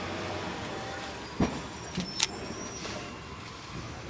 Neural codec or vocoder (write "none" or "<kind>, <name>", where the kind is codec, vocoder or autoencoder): none